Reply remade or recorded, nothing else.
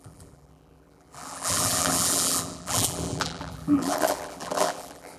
remade